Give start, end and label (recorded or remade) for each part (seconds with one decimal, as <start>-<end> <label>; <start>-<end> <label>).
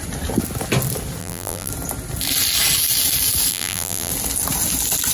0.0-1.2 recorded; 1.2-1.7 remade; 1.7-3.5 recorded; 3.5-4.1 remade; 4.1-5.1 recorded